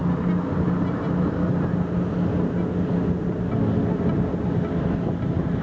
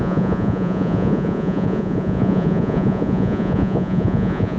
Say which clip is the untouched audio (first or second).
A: first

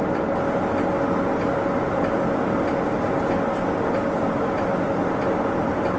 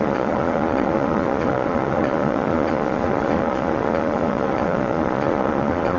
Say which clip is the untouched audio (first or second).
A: first